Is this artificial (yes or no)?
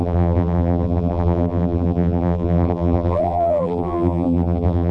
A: yes